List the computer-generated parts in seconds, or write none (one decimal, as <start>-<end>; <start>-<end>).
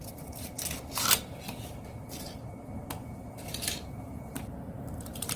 0.0-0.5; 3.7-5.4